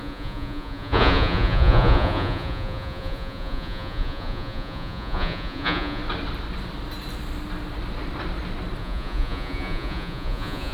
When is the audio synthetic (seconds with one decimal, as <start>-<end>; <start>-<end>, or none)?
0.0-6.0; 8.8-10.7

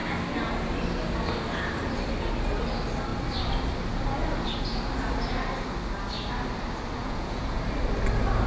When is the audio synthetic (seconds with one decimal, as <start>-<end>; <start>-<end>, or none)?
7.0-7.6

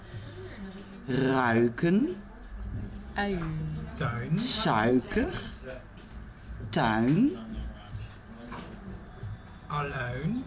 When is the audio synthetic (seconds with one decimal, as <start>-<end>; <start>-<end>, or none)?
4.9-5.5

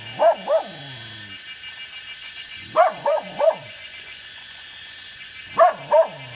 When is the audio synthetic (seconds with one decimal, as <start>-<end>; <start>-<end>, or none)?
2.2-5.3